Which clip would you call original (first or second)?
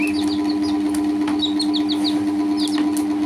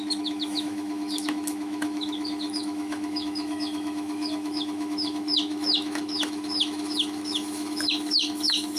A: first